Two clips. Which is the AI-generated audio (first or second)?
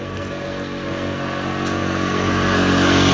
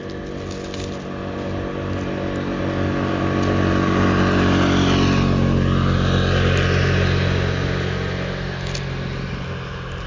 first